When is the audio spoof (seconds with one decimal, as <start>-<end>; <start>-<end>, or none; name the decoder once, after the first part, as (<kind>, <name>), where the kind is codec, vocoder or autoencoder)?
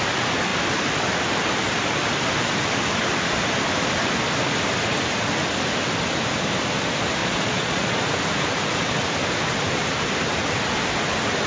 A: 7.2-8.0 (vocoder, Vocos)